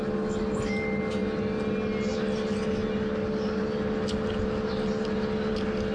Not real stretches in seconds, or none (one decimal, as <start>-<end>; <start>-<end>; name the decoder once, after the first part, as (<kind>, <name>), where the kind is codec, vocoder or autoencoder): none